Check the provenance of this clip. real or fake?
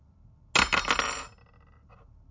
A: real